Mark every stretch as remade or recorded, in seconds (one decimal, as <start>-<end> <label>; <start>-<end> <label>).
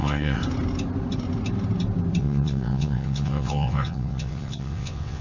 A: 0.0-0.4 remade; 0.4-2.2 recorded; 2.2-5.2 remade